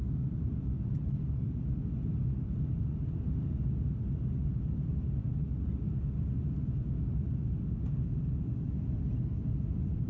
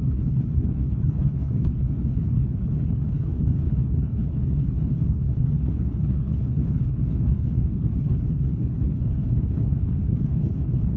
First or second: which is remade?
second